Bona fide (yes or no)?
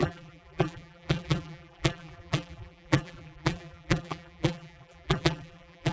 no